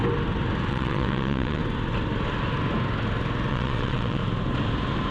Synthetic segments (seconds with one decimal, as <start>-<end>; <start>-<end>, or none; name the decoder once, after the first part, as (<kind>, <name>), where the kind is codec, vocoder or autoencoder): 0.7-1.6 (vocoder, WaveNeXt); 3.5-4.2